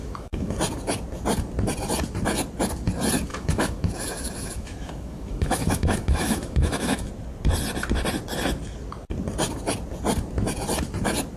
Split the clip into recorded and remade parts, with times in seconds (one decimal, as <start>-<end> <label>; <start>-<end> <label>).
0.0-0.6 remade; 0.6-3.3 recorded; 3.3-7.1 remade; 7.1-11.4 recorded